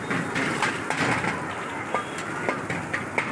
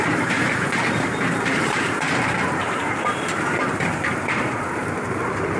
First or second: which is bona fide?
first